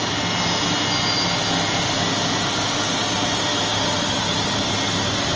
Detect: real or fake real